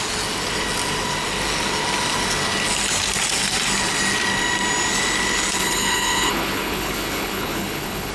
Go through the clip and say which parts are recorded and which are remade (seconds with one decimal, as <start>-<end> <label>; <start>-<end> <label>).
0.0-5.6 recorded; 5.6-8.1 remade